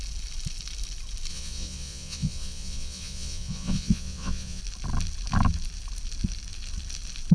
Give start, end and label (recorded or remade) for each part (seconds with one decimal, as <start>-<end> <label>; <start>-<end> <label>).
0.0-1.3 recorded; 1.3-4.6 remade; 4.6-7.3 recorded